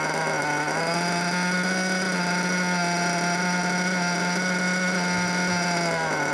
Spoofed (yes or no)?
no